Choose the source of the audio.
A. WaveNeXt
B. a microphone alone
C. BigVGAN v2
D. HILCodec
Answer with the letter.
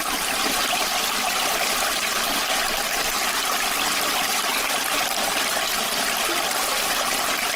B